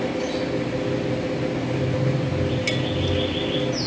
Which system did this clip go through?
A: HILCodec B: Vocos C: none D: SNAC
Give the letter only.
C